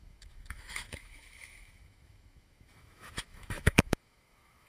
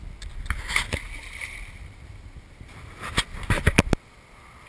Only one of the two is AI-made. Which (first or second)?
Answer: first